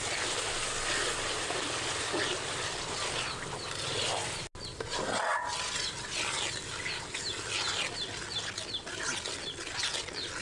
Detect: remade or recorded recorded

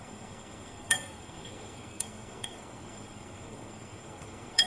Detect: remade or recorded remade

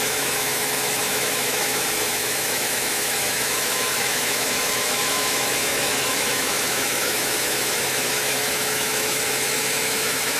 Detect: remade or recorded remade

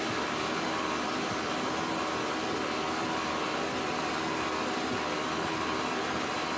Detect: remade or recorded recorded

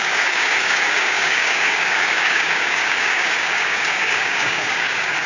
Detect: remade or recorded remade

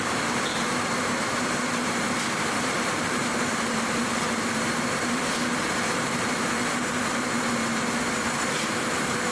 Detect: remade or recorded remade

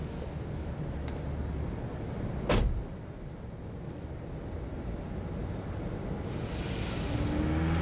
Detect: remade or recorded recorded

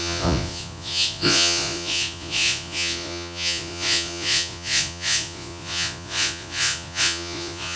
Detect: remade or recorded remade